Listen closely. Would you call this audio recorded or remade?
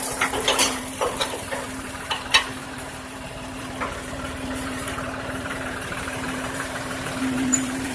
remade